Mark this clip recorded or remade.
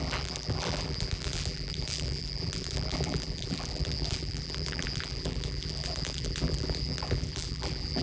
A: remade